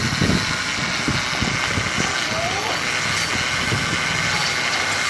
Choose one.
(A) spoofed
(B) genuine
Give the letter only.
B